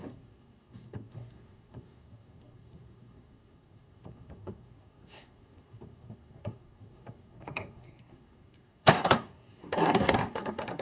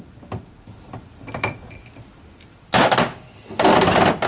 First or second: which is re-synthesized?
first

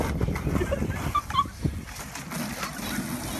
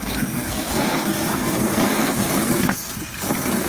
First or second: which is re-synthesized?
second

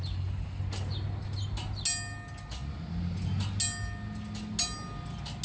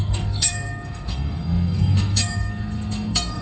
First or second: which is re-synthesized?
second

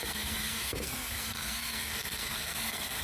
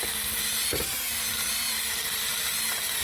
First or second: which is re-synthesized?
first